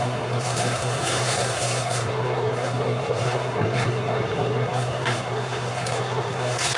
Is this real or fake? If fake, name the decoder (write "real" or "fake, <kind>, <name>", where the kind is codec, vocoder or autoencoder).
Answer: fake, codec, SNAC